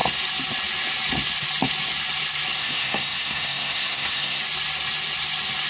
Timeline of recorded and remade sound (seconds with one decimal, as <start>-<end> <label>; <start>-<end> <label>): 0.0-2.6 recorded; 2.6-4.4 remade; 4.4-5.7 recorded